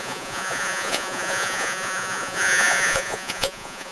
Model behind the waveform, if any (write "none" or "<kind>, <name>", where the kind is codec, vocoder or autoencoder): vocoder, Vocos